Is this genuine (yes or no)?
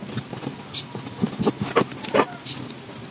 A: yes